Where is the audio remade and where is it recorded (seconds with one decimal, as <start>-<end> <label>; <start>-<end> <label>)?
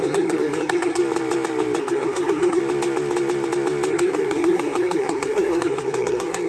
0.0-1.0 remade; 1.0-1.8 recorded; 1.8-2.6 remade; 2.6-3.9 recorded; 3.9-6.5 remade